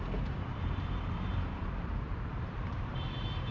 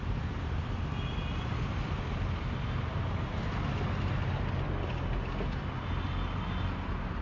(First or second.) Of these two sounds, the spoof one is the first